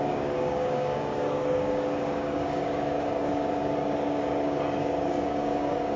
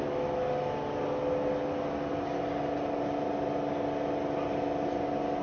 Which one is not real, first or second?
first